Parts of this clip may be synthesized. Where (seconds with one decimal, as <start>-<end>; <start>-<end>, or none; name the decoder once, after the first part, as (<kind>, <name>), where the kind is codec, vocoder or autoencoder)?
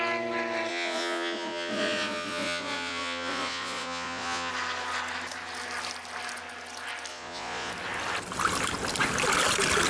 0.7-4.5 (vocoder, Vocos); 7.1-7.7